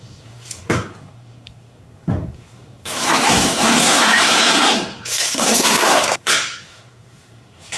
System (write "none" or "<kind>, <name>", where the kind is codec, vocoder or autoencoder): codec, SNAC